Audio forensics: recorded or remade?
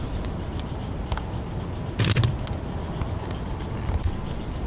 recorded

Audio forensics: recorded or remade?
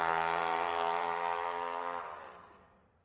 recorded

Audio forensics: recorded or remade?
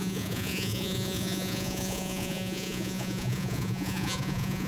remade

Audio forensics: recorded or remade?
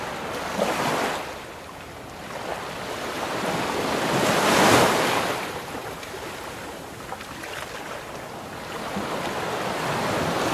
recorded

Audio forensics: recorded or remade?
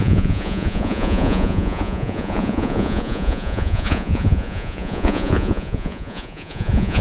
remade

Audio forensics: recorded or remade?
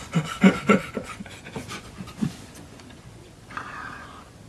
remade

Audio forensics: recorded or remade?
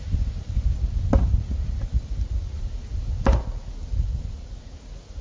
recorded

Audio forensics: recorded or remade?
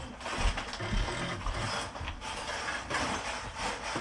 recorded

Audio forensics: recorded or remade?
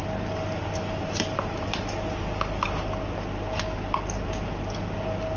recorded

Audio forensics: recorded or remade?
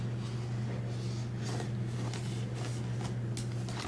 recorded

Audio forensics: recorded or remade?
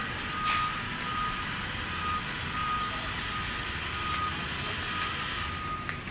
recorded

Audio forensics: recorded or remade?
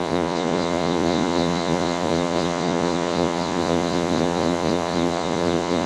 remade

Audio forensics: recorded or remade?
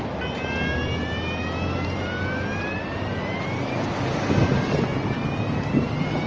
recorded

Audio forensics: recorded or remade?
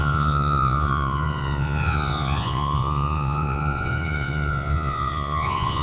remade